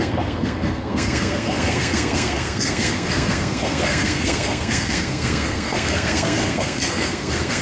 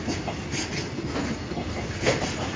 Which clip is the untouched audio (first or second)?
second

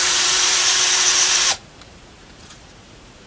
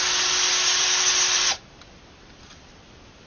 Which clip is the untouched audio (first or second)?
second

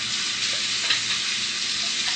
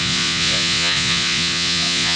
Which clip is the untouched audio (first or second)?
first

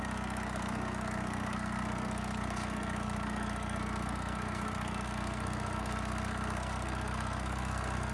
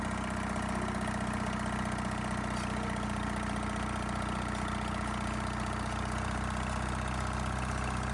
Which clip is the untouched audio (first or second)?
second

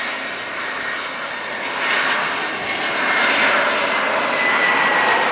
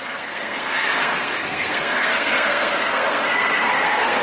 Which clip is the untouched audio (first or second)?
first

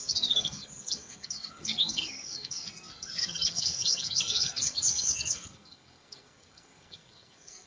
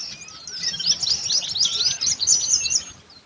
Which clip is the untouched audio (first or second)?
second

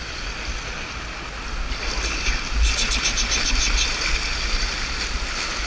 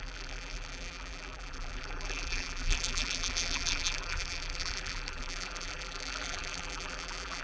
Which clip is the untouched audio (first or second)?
first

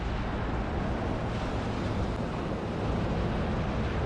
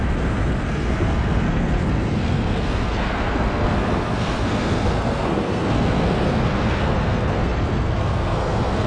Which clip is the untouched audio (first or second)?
first